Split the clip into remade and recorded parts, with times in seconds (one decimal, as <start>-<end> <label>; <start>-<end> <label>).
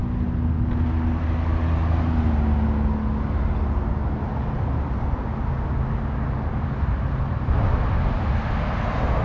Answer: 0.0-9.2 recorded